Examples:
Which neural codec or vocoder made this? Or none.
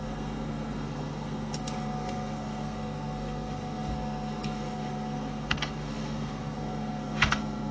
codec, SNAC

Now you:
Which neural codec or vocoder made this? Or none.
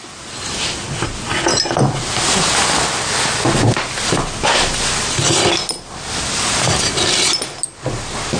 none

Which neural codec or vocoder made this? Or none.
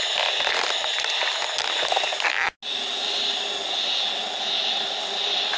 none